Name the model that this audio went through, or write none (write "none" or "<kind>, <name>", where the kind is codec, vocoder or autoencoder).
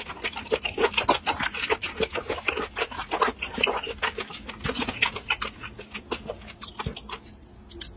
none